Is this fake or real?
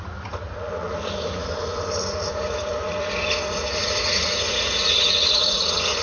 fake